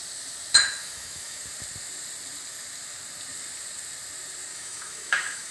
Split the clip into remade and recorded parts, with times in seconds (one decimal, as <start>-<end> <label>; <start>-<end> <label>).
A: 0.0-0.8 recorded; 0.8-1.4 remade; 1.4-4.5 recorded; 4.5-5.5 remade